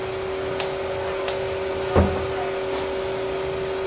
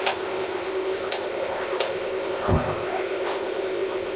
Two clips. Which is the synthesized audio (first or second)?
second